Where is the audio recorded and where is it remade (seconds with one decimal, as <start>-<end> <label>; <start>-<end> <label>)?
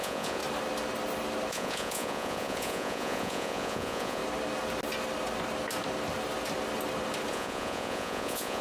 0.0-0.4 remade; 0.4-1.5 recorded; 1.5-4.2 remade; 4.2-7.3 recorded; 7.3-8.6 remade